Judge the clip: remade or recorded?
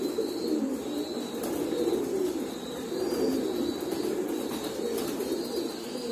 recorded